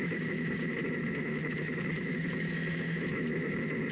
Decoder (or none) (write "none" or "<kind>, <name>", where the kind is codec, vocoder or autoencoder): autoencoder, DAC-VAE